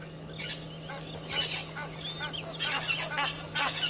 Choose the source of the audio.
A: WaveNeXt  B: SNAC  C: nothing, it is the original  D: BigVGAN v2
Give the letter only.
C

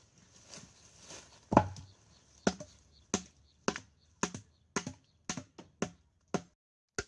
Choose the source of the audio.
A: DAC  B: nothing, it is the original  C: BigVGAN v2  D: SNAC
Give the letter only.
B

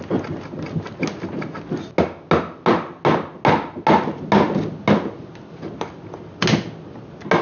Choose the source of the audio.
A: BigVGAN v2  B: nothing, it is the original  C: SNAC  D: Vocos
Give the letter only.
B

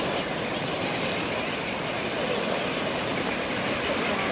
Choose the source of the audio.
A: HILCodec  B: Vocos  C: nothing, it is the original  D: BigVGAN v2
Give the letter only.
C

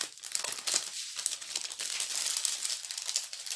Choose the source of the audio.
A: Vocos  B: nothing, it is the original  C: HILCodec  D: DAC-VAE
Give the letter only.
B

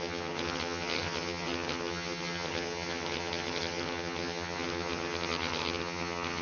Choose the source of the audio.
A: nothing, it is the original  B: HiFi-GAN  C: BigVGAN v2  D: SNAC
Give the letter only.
B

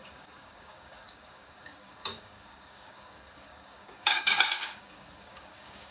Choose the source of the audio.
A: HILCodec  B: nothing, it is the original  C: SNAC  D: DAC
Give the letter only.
D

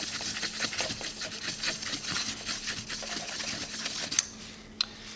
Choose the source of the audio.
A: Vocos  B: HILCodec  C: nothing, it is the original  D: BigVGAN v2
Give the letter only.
C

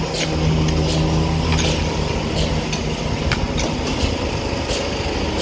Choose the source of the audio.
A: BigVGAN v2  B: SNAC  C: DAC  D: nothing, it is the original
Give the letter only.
D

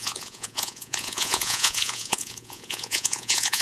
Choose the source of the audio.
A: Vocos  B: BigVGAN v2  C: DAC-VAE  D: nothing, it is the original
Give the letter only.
A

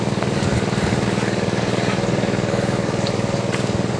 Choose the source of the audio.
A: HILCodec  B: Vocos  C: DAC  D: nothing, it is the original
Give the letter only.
C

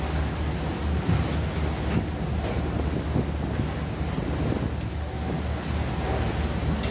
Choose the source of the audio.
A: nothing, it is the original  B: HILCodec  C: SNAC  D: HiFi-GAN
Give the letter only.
A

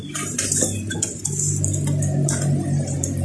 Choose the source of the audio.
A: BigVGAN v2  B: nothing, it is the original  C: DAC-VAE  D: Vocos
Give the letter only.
B